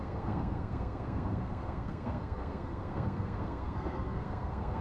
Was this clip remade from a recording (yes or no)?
yes